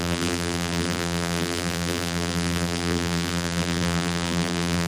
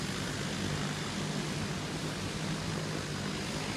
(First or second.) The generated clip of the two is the first